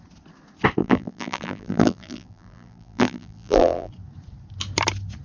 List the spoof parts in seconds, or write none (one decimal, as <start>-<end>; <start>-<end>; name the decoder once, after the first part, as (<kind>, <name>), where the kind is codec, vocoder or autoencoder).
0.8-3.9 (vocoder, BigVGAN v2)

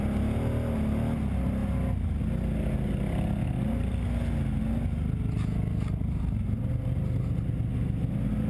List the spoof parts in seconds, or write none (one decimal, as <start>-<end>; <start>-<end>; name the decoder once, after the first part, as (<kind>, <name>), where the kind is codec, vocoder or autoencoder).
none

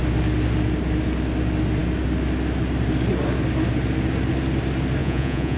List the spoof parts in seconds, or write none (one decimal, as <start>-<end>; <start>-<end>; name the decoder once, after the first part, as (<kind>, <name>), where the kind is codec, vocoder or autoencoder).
5.0-5.6 (vocoder, Vocos)

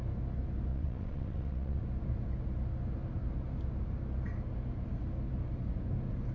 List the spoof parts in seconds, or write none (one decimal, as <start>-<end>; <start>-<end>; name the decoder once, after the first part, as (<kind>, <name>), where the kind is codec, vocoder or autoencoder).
0.7-1.8 (vocoder, WaveNeXt)

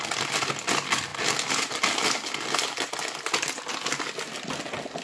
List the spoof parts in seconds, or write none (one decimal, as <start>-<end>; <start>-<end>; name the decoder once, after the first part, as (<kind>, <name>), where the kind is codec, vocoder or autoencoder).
none